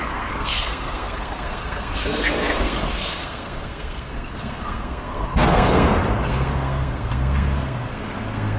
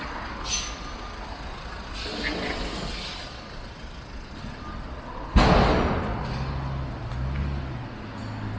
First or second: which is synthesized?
first